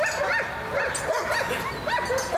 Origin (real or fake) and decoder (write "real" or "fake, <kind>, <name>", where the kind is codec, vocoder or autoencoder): real